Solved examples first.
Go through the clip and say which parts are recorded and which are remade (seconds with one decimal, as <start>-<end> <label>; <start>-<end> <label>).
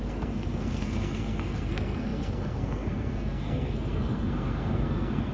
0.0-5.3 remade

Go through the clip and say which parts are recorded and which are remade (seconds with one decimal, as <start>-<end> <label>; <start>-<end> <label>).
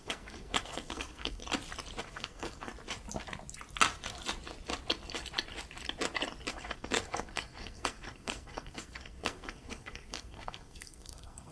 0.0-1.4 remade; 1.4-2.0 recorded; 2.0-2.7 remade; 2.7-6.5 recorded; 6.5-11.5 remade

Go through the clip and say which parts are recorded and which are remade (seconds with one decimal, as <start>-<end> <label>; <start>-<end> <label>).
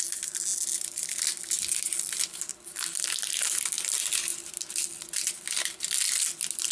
0.0-6.7 recorded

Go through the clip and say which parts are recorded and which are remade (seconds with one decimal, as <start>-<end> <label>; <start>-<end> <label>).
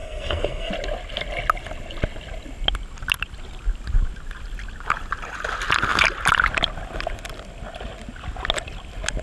0.0-0.7 remade; 0.7-9.2 recorded